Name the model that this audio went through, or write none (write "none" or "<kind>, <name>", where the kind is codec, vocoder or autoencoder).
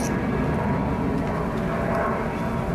none